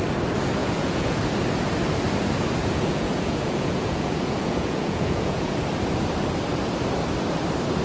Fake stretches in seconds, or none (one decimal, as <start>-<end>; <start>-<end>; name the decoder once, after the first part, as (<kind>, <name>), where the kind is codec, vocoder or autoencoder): 0.6-1.2 (vocoder, Vocos); 2.6-5.5